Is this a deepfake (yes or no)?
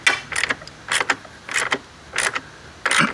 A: no